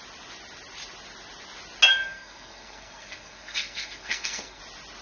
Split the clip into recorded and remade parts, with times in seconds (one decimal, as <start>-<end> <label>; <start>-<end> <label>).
0.0-1.9 recorded; 1.9-4.6 remade; 4.6-5.0 recorded